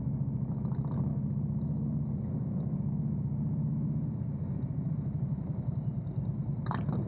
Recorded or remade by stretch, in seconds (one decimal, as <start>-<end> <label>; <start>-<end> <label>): 0.0-7.1 recorded